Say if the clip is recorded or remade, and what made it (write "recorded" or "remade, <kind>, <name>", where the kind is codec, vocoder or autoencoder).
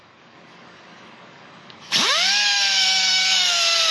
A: remade, codec, DAC